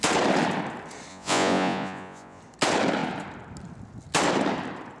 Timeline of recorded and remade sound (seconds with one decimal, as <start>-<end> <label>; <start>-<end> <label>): 0.0-1.1 recorded; 1.1-2.4 remade; 2.4-5.0 recorded